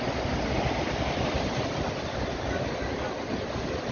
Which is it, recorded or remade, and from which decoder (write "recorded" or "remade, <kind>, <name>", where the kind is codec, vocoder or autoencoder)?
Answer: recorded